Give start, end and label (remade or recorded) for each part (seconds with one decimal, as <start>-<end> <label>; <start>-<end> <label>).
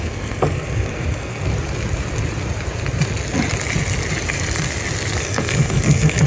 0.0-1.5 remade; 1.5-5.2 recorded; 5.2-6.3 remade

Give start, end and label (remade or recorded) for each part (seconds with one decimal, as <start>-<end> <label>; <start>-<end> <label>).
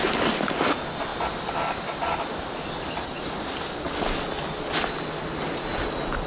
0.0-6.3 recorded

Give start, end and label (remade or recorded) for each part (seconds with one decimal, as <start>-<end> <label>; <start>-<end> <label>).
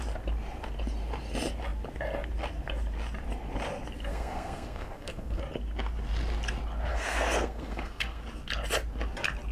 0.0-4.1 recorded; 4.1-5.4 remade; 5.4-6.9 recorded; 6.9-8.2 remade; 8.2-9.5 recorded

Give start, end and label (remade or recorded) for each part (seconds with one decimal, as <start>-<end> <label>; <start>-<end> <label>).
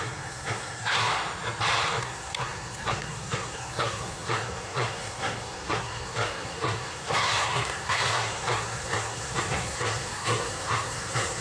0.0-1.2 remade; 1.2-2.0 recorded; 2.0-11.4 remade